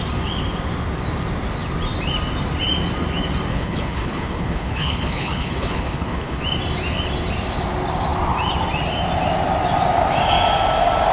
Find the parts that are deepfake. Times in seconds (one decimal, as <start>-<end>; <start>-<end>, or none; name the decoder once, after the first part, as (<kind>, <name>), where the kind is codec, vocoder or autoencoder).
3.5-6.4 (codec, HILCodec)